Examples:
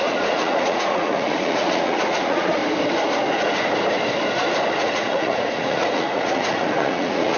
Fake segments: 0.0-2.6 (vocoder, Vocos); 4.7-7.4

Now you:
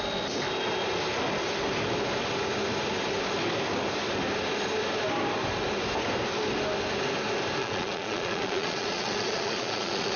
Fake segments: 7.6-10.2 (vocoder, Vocos)

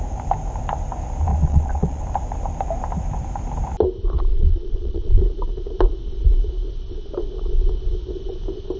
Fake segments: 1.3-2.0 (vocoder, Vocos); 4.3-5.2

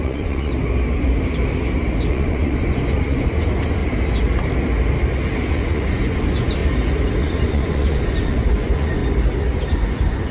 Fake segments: 0.0-0.5 (vocoder, Vocos); 2.1-3.8; 5.5-6.6; 7.2-9.0; 9.7-10.3